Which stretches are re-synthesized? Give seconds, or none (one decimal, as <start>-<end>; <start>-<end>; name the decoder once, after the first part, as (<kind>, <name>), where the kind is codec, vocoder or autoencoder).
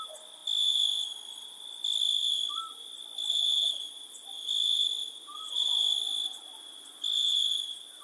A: none